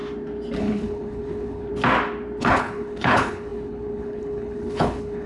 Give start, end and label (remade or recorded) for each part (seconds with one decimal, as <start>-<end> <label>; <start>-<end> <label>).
0.0-0.6 recorded; 0.6-1.7 remade; 1.7-2.4 recorded; 2.4-5.3 remade